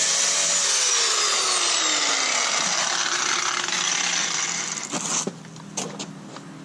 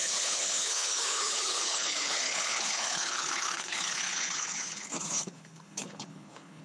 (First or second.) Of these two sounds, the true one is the first